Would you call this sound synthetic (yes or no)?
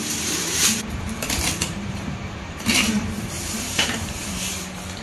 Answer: yes